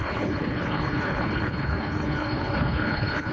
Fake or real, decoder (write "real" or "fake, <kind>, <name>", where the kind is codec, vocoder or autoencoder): fake, codec, HILCodec